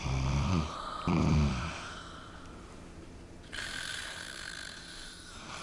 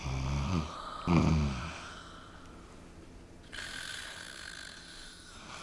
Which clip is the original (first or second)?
second